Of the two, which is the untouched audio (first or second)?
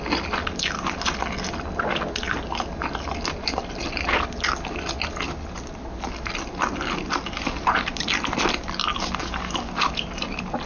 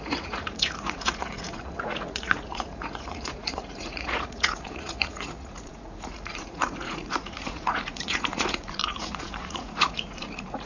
first